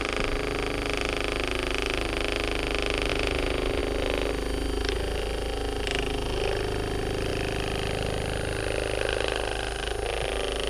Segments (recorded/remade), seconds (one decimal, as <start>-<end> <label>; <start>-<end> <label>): 0.0-3.1 recorded; 3.1-3.8 remade; 3.8-10.7 recorded